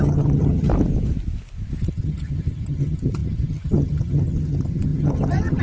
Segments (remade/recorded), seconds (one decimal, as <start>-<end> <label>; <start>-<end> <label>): 0.0-0.7 remade; 0.7-1.8 recorded; 1.8-5.6 remade